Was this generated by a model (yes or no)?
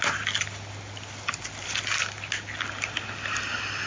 no